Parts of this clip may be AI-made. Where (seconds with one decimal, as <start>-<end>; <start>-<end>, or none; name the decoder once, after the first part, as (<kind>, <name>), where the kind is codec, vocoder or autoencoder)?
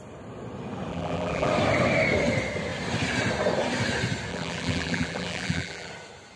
0.9-1.5 (vocoder, BigVGAN v2); 4.3-5.9